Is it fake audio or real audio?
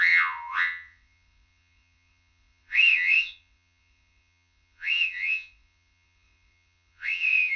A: fake